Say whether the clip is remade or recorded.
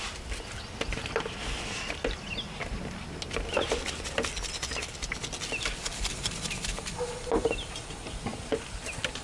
recorded